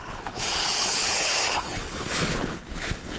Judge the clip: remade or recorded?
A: remade